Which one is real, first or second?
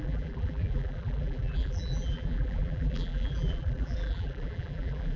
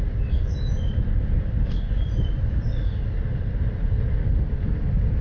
second